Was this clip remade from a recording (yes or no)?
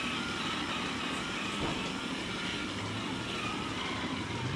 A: no